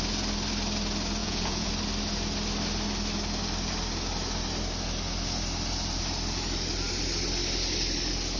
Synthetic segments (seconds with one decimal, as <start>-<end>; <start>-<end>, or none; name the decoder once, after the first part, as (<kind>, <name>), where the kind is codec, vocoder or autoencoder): 1.2-1.7 (vocoder, Vocos)